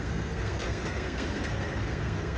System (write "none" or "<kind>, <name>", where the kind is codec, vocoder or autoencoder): codec, SNAC